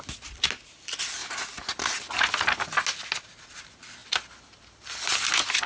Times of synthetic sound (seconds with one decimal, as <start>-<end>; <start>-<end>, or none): none